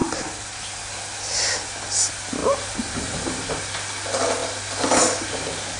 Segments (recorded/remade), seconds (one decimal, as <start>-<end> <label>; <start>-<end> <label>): 0.0-0.6 remade; 0.6-2.4 recorded; 2.4-3.4 remade; 3.4-5.8 recorded